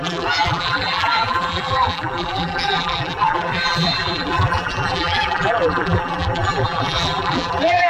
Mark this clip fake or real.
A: fake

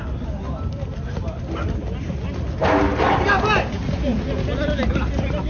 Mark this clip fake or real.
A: real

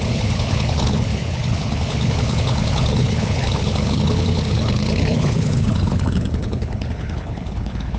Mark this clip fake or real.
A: fake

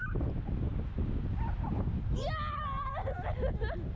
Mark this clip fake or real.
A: real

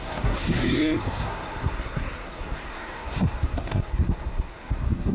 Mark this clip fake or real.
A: fake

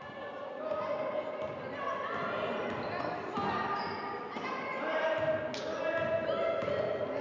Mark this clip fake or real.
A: real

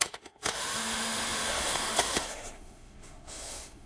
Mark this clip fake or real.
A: fake